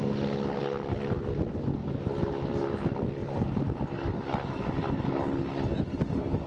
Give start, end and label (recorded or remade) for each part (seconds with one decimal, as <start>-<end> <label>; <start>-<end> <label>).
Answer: 0.0-6.5 recorded